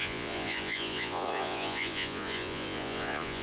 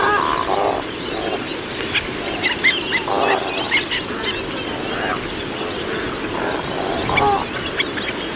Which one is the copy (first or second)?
first